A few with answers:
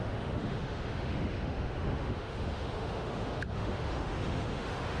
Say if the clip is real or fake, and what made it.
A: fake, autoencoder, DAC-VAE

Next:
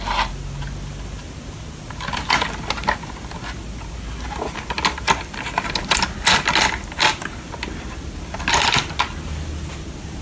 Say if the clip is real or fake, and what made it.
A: real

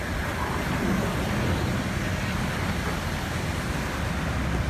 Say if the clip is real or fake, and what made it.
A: real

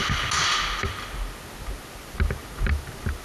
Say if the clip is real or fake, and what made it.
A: real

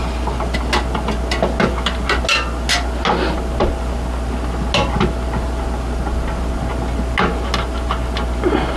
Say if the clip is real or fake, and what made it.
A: real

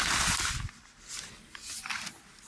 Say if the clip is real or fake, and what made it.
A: real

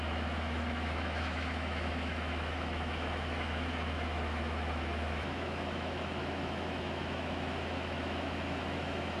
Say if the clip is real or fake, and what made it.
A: fake, autoencoder, DAC-VAE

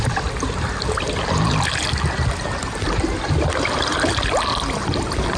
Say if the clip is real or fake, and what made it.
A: real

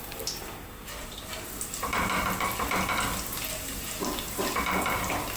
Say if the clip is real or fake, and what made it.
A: real